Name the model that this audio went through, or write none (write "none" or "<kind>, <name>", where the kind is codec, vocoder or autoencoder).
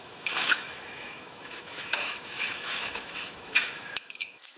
autoencoder, DAC-VAE